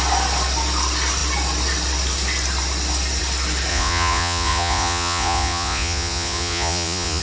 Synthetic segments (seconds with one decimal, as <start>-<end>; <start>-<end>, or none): 3.7-7.2